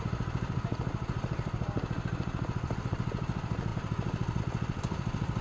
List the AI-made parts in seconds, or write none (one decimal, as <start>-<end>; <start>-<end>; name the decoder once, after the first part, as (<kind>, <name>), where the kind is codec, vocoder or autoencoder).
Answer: none